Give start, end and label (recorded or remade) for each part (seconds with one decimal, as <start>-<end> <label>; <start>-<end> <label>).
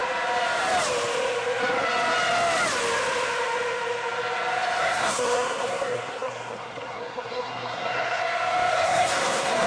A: 0.0-4.8 recorded; 4.8-8.2 remade; 8.2-8.7 recorded; 8.7-9.7 remade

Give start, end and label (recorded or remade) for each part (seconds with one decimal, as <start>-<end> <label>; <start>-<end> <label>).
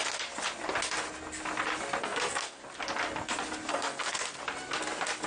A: 0.0-2.0 recorded; 2.0-2.6 remade; 2.6-3.7 recorded; 3.7-4.4 remade; 4.4-5.3 recorded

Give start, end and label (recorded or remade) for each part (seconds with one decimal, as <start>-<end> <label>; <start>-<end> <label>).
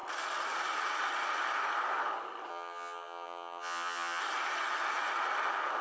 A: 0.0-2.5 recorded; 2.5-4.2 remade; 4.2-5.8 recorded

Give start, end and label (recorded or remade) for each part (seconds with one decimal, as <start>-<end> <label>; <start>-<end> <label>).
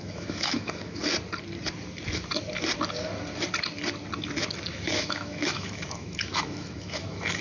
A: 0.0-1.0 remade; 1.0-4.7 recorded; 4.7-7.4 remade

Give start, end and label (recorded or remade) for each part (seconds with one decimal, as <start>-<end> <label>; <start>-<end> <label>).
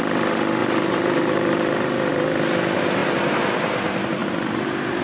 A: 0.0-0.6 recorded; 0.6-2.1 remade; 2.1-4.2 recorded; 4.2-5.0 remade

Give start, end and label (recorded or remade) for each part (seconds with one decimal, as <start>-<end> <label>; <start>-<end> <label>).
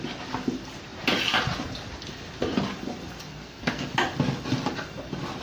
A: 0.0-3.3 recorded; 3.3-3.9 remade; 3.9-5.4 recorded